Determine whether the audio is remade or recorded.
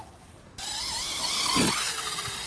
recorded